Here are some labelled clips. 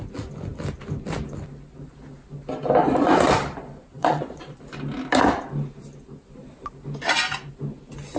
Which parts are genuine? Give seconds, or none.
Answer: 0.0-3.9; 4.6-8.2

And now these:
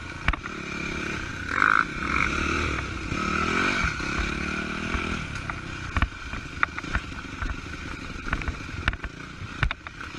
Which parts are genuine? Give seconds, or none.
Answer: 0.0-10.2

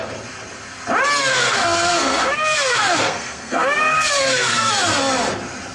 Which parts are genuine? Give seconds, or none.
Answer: 0.0-1.3; 4.7-5.7

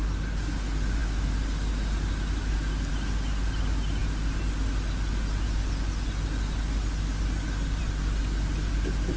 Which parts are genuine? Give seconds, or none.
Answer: 0.0-9.2

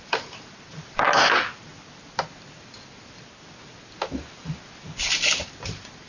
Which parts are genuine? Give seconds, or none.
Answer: 1.7-5.4

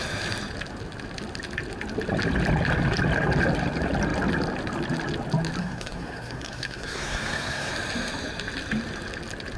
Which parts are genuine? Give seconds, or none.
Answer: 0.0-5.6; 7.7-9.6